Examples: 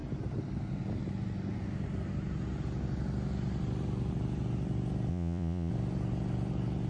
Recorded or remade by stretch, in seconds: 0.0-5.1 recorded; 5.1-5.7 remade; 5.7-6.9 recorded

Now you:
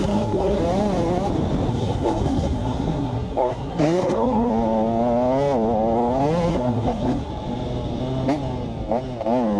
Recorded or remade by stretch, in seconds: 0.0-0.6 remade; 0.6-1.7 recorded; 1.7-4.5 remade; 4.5-6.5 recorded; 6.5-7.3 remade; 7.3-9.6 recorded

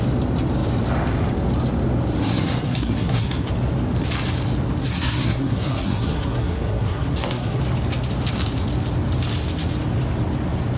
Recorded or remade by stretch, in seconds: 0.0-2.2 recorded; 2.2-3.5 remade; 3.5-4.8 recorded; 4.8-7.6 remade; 7.6-10.8 recorded